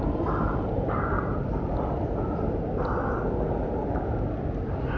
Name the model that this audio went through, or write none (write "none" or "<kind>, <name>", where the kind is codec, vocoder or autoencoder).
none